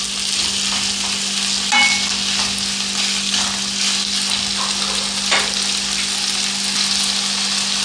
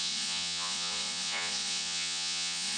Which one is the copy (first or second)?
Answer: second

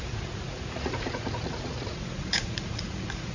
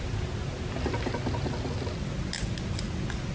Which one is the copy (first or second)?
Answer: first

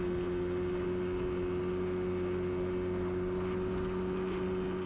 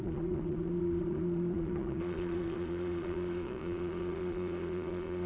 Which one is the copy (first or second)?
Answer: second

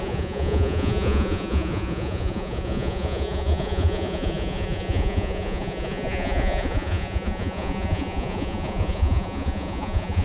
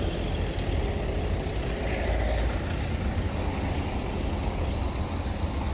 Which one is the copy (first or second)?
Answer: first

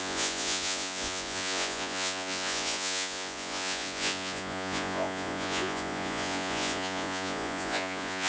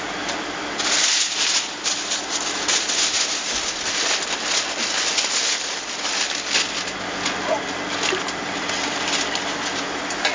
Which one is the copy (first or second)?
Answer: first